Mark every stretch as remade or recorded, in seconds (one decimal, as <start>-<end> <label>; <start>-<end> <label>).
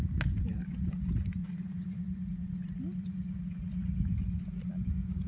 0.0-1.4 recorded; 1.4-2.8 remade; 2.8-5.3 recorded